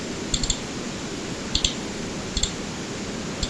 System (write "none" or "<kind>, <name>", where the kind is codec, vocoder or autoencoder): none